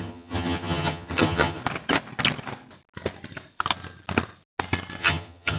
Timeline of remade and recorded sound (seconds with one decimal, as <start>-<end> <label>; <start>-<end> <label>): 0.0-1.6 remade; 1.6-5.0 recorded; 5.0-5.6 remade